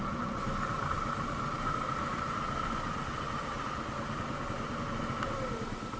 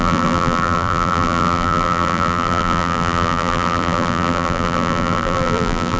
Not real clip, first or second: second